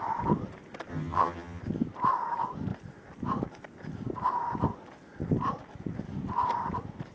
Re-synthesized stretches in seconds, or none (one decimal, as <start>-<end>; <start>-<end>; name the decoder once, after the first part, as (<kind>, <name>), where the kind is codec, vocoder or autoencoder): 0.9-1.6 (vocoder, HiFi-GAN)